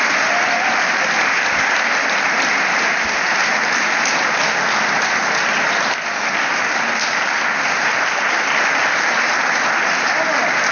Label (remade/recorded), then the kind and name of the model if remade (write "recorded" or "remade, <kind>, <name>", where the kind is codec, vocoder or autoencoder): recorded